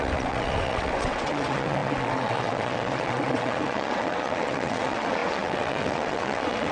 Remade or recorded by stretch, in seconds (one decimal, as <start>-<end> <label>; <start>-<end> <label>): 0.0-6.7 remade